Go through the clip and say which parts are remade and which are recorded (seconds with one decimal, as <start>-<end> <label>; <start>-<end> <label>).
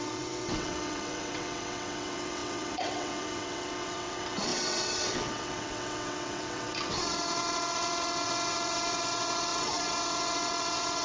0.0-11.0 remade